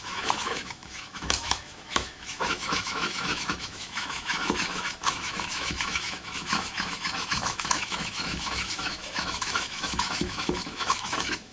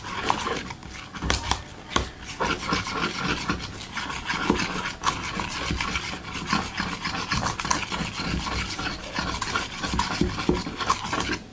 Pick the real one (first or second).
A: second